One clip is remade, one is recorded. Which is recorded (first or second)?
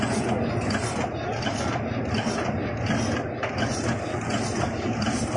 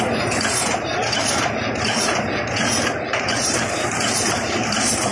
first